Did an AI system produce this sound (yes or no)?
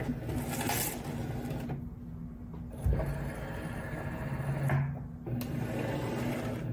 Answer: no